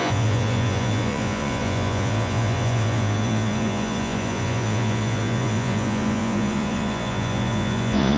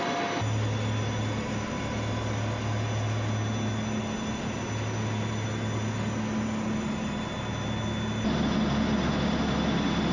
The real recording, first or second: second